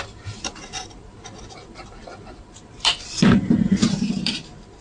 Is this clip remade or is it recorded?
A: remade